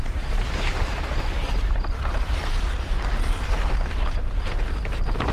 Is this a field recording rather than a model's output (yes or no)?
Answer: no